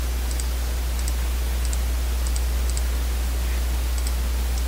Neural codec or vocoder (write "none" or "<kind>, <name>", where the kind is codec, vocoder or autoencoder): none